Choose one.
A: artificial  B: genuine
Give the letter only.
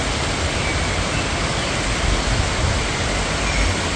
B